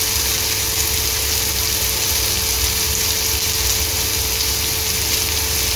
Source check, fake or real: real